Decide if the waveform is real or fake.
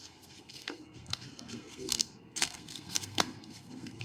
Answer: fake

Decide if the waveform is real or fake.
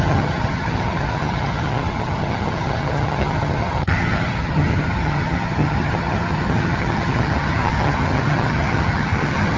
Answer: fake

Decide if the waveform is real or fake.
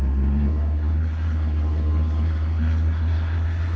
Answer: fake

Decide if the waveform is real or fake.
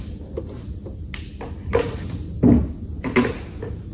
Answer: real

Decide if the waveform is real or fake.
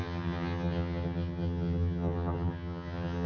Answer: fake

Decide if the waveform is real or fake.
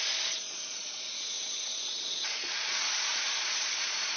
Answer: fake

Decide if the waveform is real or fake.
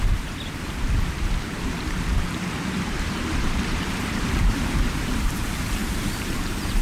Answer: fake